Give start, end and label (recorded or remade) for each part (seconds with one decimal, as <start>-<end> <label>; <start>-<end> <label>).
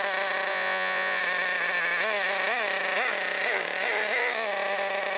0.0-0.5 recorded; 0.5-1.2 remade; 1.2-5.2 recorded